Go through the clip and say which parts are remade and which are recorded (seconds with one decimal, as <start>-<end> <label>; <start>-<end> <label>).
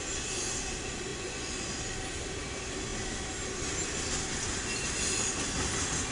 0.0-1.1 recorded; 1.1-1.6 remade; 1.6-6.1 recorded